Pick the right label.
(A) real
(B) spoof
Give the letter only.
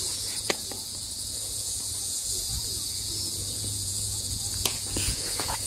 B